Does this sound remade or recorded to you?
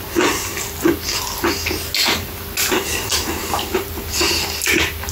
recorded